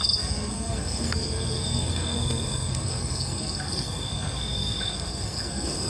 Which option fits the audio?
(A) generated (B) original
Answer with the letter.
A